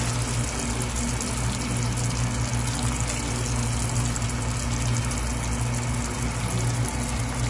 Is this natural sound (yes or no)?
yes